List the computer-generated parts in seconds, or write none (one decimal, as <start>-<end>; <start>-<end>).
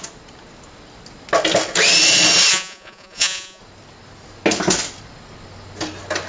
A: 2.5-3.6